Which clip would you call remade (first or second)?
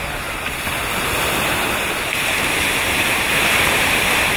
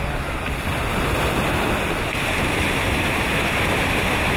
first